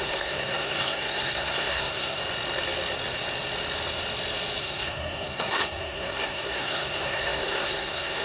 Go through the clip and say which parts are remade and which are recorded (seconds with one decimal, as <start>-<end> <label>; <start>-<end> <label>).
0.0-2.2 remade; 2.2-4.6 recorded; 4.6-8.2 remade